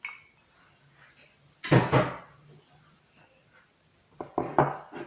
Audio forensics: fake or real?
real